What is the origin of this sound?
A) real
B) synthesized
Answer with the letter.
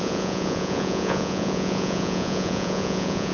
B